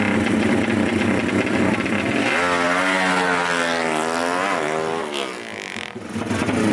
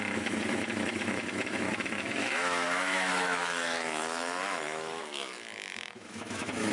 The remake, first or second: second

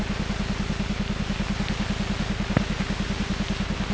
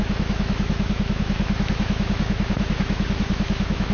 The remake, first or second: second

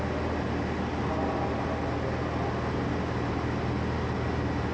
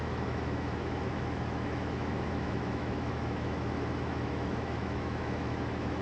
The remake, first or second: second